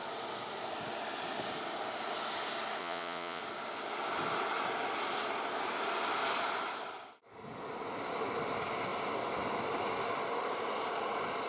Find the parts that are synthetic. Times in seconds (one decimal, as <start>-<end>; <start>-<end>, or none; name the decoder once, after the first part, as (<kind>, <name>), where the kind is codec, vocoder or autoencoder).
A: 2.8-3.4 (vocoder, Vocos)